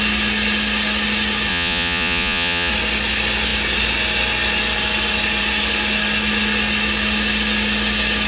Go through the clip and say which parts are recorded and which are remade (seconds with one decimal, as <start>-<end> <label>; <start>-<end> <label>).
0.0-1.5 recorded; 1.5-2.7 remade; 2.7-8.3 recorded